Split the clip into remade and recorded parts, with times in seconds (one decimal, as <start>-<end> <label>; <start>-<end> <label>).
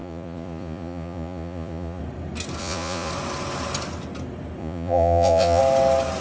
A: 0.0-2.0 remade; 2.0-2.6 recorded; 2.6-3.1 remade; 3.1-4.6 recorded; 4.6-5.6 remade; 5.6-6.2 recorded